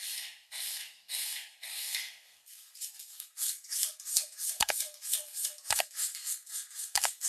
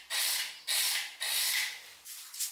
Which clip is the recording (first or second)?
second